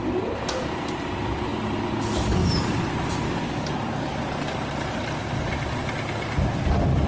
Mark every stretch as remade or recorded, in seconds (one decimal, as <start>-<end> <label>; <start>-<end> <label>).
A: 0.0-7.1 recorded